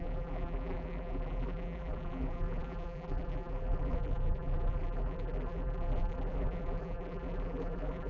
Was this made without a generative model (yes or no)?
no